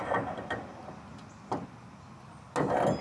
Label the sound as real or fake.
real